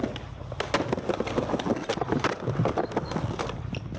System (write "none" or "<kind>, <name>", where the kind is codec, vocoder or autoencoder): none